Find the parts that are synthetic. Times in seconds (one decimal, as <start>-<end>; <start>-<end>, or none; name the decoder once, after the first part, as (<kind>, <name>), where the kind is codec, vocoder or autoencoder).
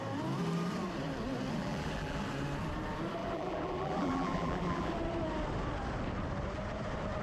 1.6-2.2 (vocoder, BigVGAN v2); 3.2-4.9